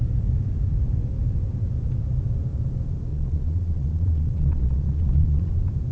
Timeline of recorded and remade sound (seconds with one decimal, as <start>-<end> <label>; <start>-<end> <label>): 0.0-3.1 recorded; 3.1-5.5 remade; 5.5-5.9 recorded